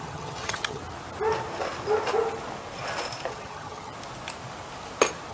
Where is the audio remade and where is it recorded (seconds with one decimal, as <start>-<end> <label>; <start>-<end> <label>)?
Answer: 0.0-0.8 remade; 0.8-3.3 recorded; 3.3-3.9 remade; 3.9-5.3 recorded

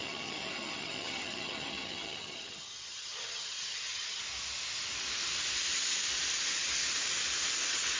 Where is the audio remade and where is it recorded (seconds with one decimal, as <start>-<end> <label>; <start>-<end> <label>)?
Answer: 0.0-4.2 remade; 4.2-8.0 recorded

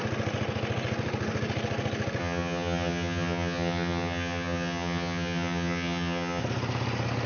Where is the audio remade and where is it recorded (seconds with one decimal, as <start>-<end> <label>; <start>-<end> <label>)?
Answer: 0.0-2.2 recorded; 2.2-6.4 remade; 6.4-7.3 recorded

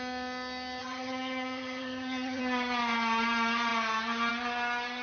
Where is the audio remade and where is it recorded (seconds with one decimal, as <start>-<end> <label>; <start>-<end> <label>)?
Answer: 0.0-0.8 recorded; 0.8-2.4 remade; 2.4-5.0 recorded

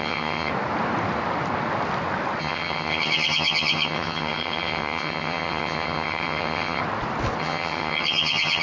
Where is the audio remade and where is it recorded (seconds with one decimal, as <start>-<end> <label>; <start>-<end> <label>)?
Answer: 0.0-0.5 remade; 0.5-2.4 recorded; 2.4-6.8 remade; 6.8-7.4 recorded; 7.4-8.6 remade